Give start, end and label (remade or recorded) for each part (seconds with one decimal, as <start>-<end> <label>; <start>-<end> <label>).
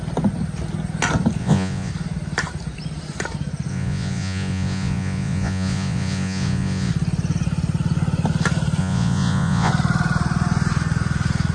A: 0.0-1.4 recorded; 1.4-1.9 remade; 1.9-3.7 recorded; 3.7-6.9 remade; 6.9-8.8 recorded; 8.8-9.7 remade; 9.7-11.5 recorded